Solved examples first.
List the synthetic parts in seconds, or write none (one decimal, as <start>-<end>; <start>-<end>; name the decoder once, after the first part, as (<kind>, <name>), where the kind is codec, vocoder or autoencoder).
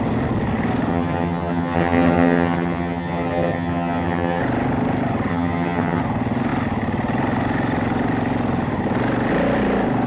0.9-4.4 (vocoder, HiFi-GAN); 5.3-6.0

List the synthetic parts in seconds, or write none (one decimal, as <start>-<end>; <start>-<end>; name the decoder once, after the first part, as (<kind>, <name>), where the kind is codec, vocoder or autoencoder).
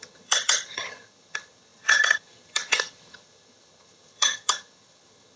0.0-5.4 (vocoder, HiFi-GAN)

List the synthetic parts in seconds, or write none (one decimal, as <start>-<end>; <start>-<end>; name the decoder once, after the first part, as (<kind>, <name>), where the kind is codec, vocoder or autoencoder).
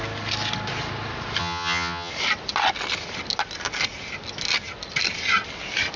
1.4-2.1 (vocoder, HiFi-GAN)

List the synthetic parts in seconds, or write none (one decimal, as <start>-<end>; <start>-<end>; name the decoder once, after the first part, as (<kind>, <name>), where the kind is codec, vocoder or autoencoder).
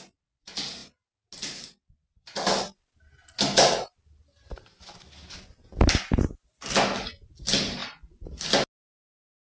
none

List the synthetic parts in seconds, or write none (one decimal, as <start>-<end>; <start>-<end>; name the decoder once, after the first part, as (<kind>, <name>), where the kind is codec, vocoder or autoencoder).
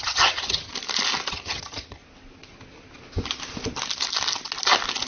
0.0-0.7 (vocoder, HiFi-GAN); 1.3-2.0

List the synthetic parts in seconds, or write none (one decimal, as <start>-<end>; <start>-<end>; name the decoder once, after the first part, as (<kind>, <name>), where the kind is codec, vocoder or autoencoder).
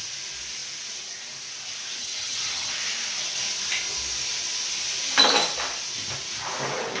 2.0-2.7 (vocoder, HiFi-GAN)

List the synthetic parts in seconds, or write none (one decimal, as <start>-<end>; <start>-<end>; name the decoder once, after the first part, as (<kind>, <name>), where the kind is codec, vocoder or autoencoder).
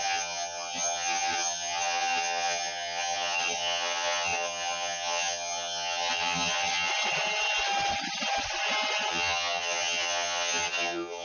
0.0-6.9 (vocoder, HiFi-GAN); 9.1-11.2